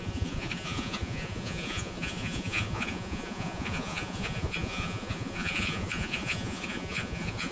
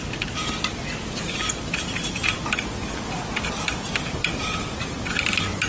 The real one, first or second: second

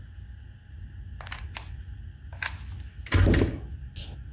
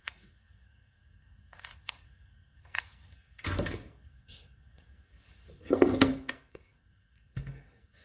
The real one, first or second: first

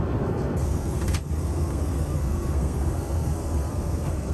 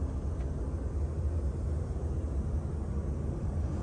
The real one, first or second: second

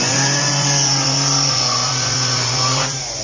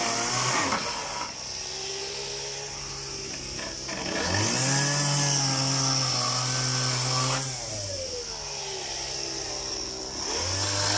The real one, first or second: second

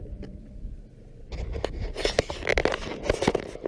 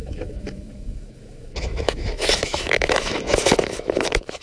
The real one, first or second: first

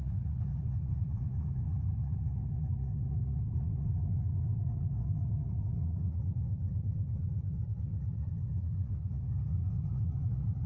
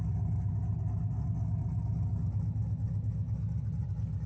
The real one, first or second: second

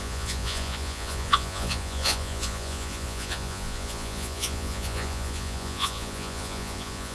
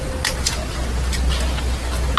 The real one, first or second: second